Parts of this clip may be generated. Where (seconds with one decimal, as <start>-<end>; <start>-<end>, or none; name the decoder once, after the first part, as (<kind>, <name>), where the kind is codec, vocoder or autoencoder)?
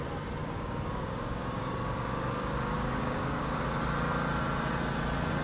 0.4-3.6 (codec, DAC)